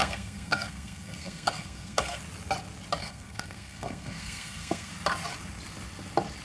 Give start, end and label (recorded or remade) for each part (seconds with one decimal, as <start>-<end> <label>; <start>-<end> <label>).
0.0-2.2 remade; 2.2-3.0 recorded; 3.0-4.9 remade; 4.9-6.4 recorded